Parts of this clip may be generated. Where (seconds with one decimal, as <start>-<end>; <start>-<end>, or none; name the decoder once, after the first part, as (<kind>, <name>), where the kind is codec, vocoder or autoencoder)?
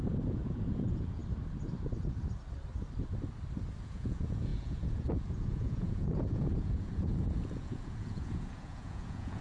0.0-1.2 (vocoder, Vocos); 3.8-9.4